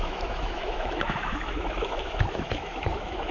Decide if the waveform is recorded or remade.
remade